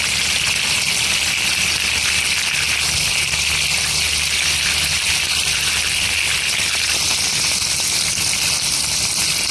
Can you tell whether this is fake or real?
real